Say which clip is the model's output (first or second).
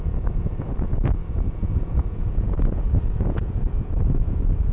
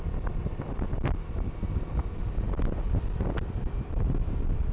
first